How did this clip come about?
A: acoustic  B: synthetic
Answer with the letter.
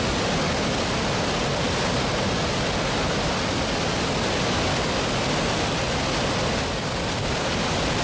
A